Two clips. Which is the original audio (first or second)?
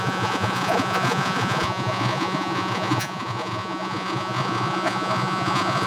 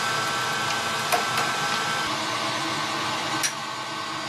second